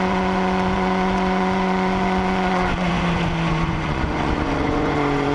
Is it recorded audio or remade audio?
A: remade